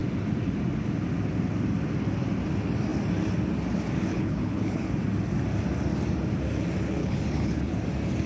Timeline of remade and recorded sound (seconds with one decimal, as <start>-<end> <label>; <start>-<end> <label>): 0.0-4.1 recorded; 4.1-4.8 remade; 4.8-7.0 recorded; 7.0-7.7 remade; 7.7-8.3 recorded